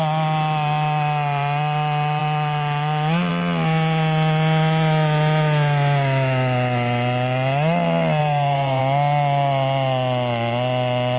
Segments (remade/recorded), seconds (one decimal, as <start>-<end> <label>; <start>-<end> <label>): 0.0-8.2 recorded; 8.2-8.8 remade; 8.8-11.2 recorded